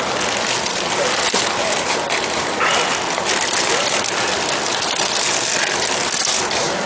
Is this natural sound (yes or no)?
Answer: yes